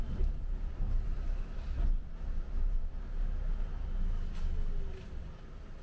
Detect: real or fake real